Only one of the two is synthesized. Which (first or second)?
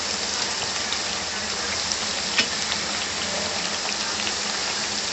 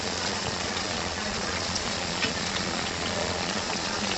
second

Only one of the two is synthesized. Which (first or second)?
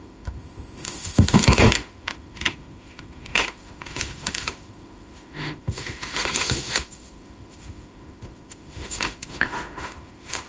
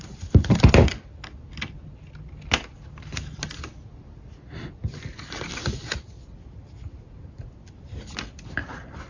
first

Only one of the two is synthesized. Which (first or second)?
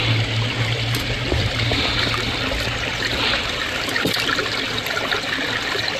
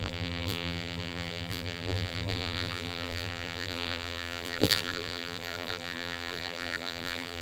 second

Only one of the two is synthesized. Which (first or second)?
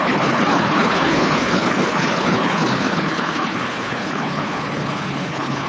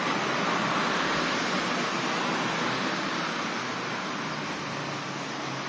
first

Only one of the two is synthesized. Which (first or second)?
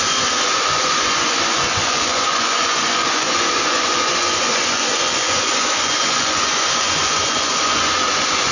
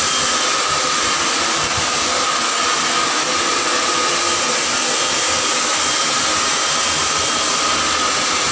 first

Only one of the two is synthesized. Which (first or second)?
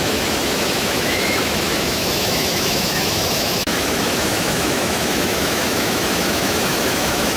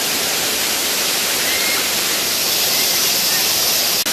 first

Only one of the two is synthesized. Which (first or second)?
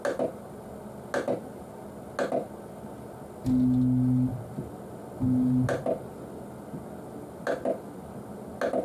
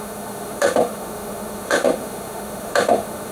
second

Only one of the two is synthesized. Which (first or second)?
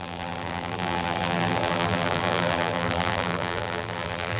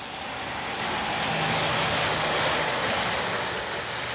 first